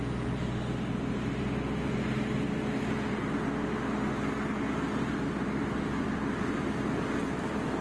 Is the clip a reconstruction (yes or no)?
no